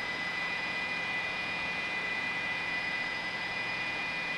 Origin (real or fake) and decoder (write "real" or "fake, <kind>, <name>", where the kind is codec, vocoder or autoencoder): fake, vocoder, Vocos